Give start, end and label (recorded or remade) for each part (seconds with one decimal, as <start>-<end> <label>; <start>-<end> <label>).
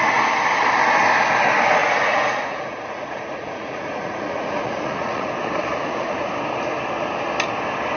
0.0-1.8 recorded; 1.8-5.3 remade; 5.3-5.7 recorded; 5.7-6.3 remade; 6.3-8.0 recorded